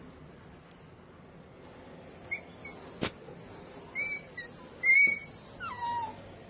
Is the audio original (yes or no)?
yes